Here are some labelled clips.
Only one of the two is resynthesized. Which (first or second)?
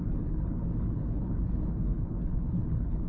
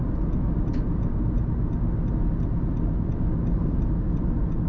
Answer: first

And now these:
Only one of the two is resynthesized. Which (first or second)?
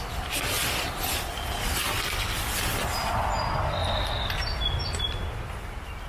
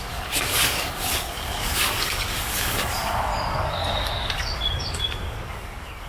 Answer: second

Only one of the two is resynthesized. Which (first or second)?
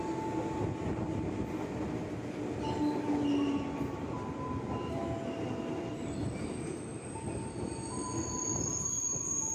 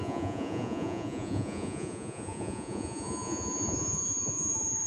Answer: second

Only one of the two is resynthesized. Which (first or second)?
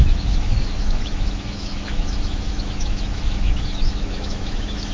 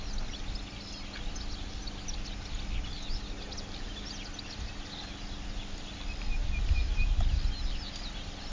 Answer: first